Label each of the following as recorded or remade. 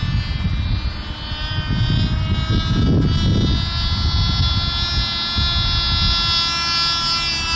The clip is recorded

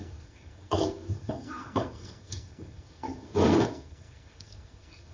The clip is remade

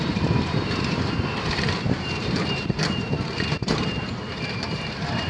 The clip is remade